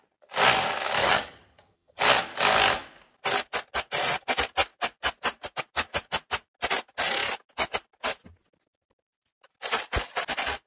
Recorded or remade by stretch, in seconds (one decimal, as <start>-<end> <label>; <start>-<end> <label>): 0.0-1.0 recorded; 1.0-2.0 remade; 2.0-10.7 recorded